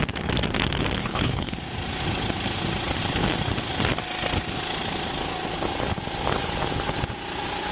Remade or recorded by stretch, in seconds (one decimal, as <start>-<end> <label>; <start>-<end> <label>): 0.0-1.0 recorded; 1.0-1.5 remade; 1.5-7.7 recorded